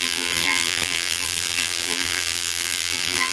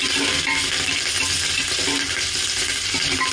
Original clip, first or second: second